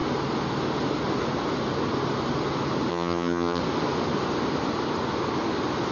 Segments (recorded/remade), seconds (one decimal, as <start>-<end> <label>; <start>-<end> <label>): 0.0-2.9 recorded; 2.9-3.6 remade; 3.6-5.9 recorded